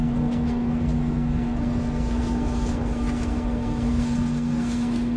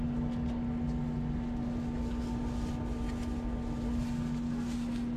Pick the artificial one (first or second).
first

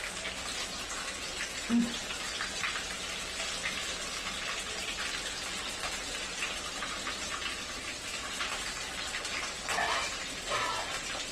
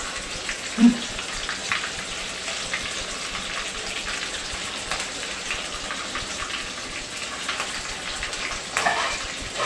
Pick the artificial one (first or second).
second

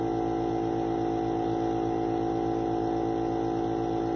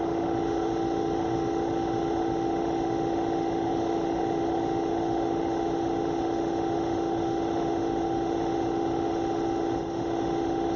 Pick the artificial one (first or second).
second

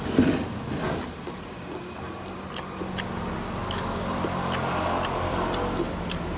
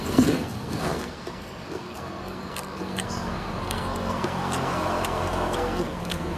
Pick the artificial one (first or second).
second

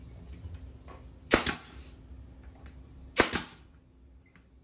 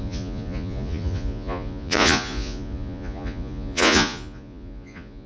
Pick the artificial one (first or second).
second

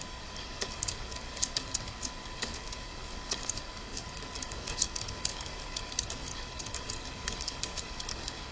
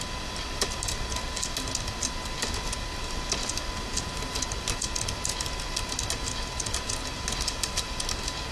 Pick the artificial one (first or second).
first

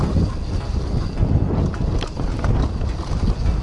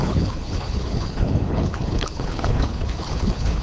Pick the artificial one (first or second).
second